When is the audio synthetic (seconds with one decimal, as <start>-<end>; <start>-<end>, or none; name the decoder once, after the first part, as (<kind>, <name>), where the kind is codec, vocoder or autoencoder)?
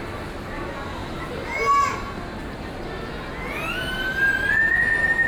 none